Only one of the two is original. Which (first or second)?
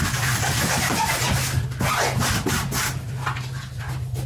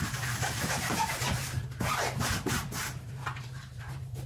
first